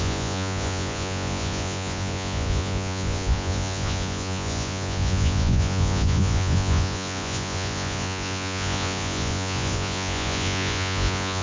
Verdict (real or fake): fake